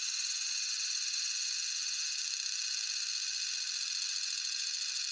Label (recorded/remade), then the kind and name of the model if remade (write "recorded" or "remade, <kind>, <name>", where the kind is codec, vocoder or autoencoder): recorded